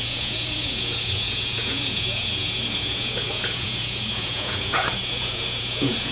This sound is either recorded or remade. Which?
remade